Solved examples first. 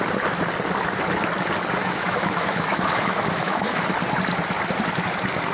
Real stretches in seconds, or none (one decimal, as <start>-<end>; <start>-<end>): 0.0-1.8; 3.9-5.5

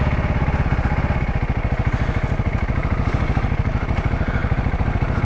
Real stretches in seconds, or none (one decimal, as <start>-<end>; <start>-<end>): 0.0-5.2

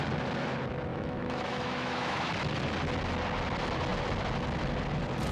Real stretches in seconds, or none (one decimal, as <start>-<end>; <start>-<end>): 0.0-0.9; 2.3-5.3

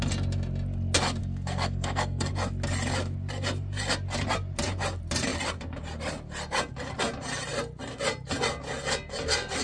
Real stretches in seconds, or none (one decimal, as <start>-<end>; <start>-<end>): 0.0-1.2; 2.3-9.6